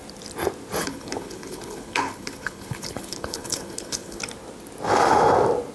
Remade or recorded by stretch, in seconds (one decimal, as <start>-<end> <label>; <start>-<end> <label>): 0.0-0.8 recorded; 0.8-4.2 remade; 4.2-5.7 recorded